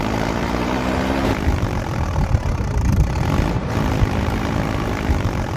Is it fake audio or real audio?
fake